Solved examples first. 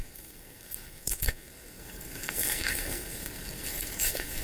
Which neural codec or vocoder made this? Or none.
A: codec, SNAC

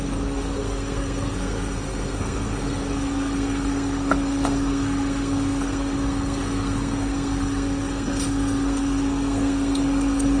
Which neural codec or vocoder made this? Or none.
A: codec, SNAC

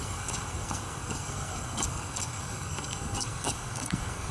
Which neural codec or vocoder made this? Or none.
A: codec, SNAC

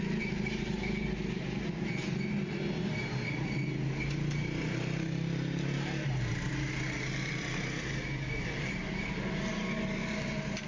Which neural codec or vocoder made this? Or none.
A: none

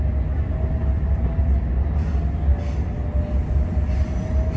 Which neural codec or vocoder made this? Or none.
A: none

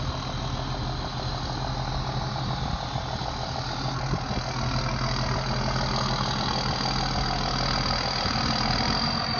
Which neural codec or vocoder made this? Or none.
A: none